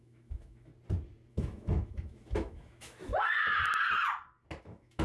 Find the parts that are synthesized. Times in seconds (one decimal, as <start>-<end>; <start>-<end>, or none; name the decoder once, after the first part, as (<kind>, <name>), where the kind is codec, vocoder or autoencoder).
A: 0.0-0.7 (autoencoder, DAC-VAE); 1.3-3.1; 4.6-5.0